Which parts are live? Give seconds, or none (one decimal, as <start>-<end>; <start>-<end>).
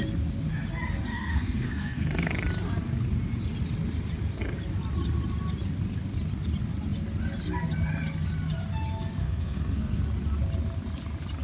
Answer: 0.0-1.1; 2.3-9.2; 10.0-11.4